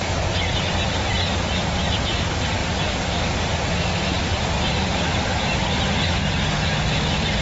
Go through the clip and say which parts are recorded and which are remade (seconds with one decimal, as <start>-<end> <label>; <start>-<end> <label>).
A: 0.0-0.7 recorded; 0.7-2.6 remade; 2.6-6.3 recorded; 6.3-7.4 remade